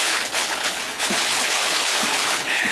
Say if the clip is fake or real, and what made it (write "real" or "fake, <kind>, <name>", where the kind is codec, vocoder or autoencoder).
fake, codec, HILCodec